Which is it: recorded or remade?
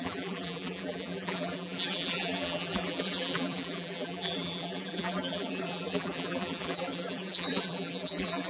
remade